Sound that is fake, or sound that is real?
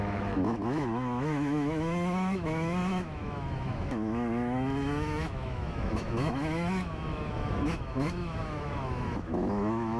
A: fake